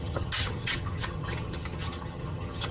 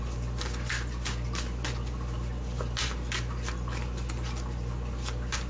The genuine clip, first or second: second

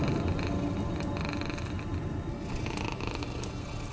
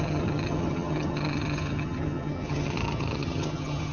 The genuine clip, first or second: first